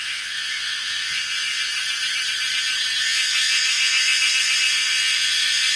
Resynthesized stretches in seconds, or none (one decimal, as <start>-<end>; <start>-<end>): 0.0-1.7; 3.0-5.8